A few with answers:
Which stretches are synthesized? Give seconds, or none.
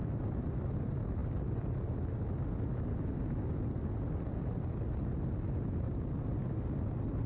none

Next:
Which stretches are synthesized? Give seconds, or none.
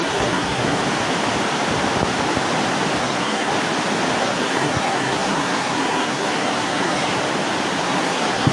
0.0-0.8 (codec, SNAC); 3.0-3.5; 4.2-7.2; 7.8-8.5